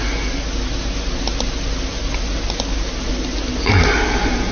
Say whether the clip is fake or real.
real